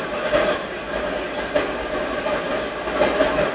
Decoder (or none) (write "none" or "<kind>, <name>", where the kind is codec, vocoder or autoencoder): none